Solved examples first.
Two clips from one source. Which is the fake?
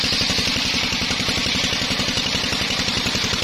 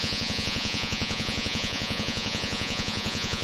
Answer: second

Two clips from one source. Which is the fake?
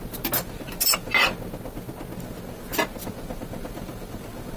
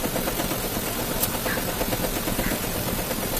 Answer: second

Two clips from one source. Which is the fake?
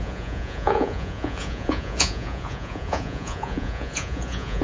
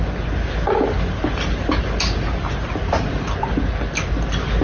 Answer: first